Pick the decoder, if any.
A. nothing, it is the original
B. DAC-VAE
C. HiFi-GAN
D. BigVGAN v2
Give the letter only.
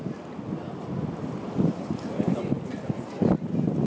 D